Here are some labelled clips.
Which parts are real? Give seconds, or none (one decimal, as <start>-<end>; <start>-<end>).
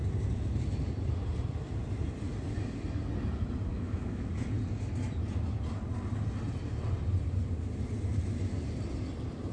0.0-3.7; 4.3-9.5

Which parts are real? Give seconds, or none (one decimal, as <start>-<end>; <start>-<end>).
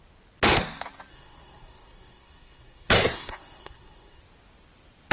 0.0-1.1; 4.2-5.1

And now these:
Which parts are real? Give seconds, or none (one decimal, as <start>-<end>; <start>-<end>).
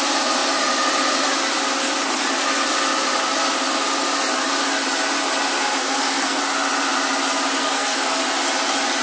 0.0-5.8; 6.4-7.6; 8.2-9.0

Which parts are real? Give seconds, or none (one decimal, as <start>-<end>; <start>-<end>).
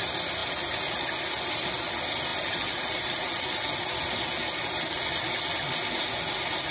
0.0-6.7